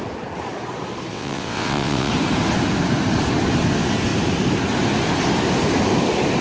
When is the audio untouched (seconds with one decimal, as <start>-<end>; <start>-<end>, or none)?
0.0-1.1; 2.1-6.4